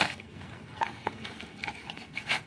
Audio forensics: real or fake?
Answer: fake